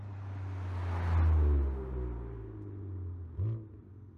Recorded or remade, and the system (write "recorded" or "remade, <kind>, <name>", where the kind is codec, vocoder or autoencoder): recorded